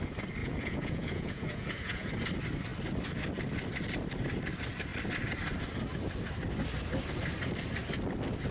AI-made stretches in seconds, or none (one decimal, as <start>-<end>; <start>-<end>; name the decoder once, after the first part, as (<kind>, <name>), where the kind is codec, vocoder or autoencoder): 0.4-2.1 (vocoder, Vocos)